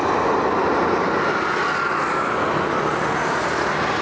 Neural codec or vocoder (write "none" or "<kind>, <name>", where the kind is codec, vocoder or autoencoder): none